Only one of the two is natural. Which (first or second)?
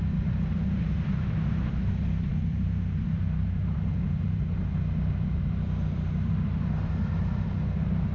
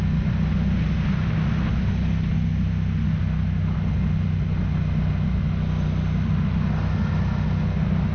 second